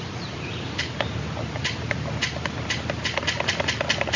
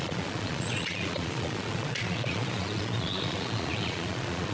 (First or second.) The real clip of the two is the first